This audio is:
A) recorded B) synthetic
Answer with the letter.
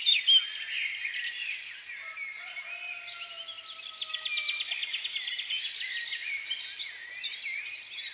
A